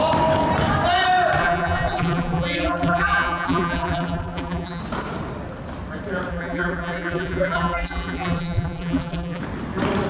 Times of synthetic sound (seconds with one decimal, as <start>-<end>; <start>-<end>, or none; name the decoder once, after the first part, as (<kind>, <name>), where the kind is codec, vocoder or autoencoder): 1.4-4.8 (vocoder, BigVGAN v2); 6.3-9.4